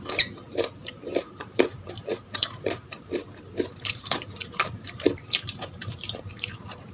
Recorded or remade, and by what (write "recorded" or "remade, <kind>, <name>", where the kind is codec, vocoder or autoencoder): remade, vocoder, BigVGAN v2